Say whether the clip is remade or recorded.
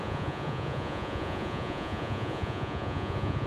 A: remade